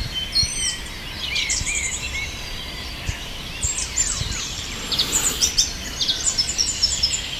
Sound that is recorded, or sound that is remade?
remade